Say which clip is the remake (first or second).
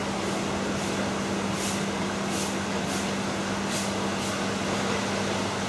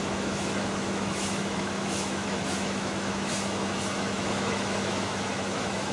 second